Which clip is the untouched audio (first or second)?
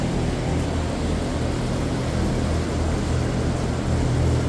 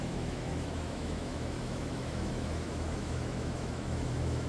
first